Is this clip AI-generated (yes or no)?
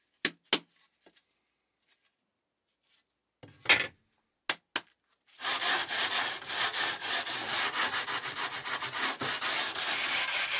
no